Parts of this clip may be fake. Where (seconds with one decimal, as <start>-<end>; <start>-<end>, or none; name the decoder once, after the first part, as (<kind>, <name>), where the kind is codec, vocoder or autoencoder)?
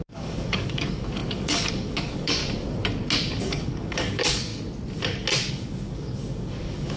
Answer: 0.0-2.4 (codec, DAC); 3.4-4.5; 5.5-7.0